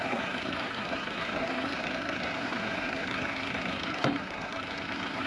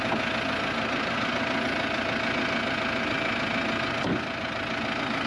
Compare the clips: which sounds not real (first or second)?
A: first